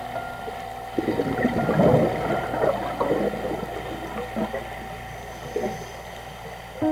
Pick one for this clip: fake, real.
real